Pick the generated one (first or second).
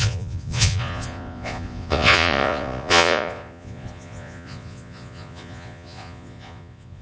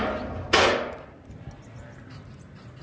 first